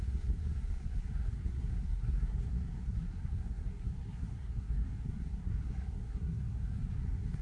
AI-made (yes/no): yes